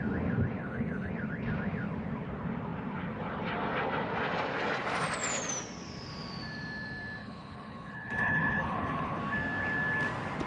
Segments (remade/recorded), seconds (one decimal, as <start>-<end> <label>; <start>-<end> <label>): 0.0-0.6 recorded; 0.6-1.1 remade; 1.1-7.2 recorded; 7.2-9.2 remade; 9.2-10.5 recorded